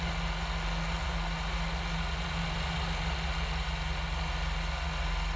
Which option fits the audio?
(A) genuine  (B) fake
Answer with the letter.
A